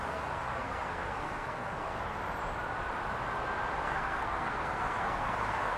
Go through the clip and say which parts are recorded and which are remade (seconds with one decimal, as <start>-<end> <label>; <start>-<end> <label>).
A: 0.0-2.2 remade; 2.2-3.8 recorded; 3.8-5.8 remade